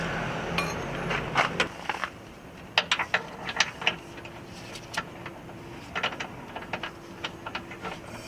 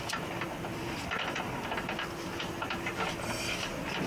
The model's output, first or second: second